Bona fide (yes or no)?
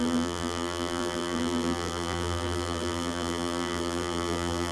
no